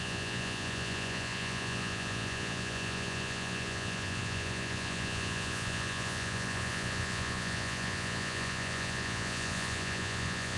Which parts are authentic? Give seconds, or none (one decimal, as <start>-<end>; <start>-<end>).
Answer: none